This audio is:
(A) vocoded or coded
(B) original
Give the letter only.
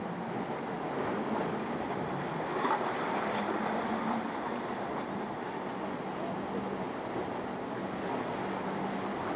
B